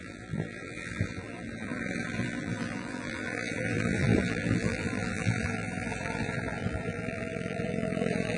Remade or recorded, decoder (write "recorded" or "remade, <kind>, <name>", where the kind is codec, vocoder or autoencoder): remade, vocoder, BigVGAN v2